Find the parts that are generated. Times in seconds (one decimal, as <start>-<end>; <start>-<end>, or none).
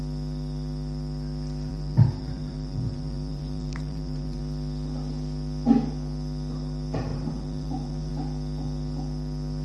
1.7-4.4; 7.1-8.1